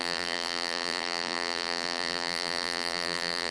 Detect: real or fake fake